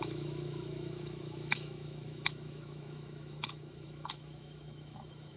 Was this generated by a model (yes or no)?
yes